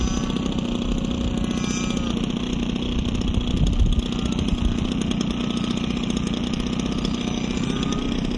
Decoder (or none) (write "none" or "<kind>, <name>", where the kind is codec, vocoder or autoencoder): none